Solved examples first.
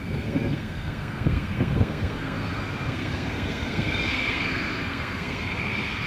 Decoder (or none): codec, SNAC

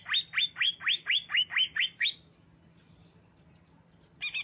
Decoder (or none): none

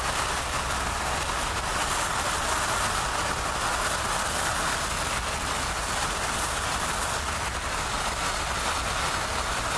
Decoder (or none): none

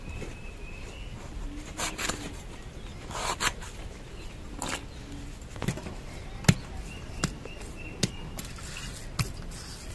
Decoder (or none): none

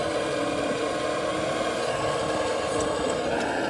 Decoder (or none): none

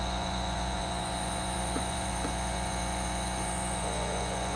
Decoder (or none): vocoder, Vocos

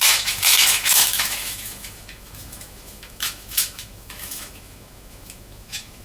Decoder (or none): autoencoder, DAC-VAE